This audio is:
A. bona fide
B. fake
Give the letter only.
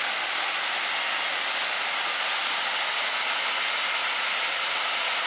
A